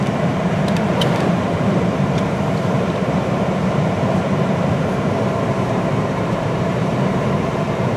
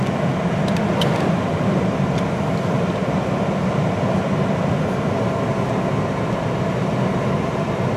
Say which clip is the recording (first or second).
second